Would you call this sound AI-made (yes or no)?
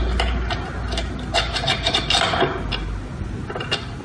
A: no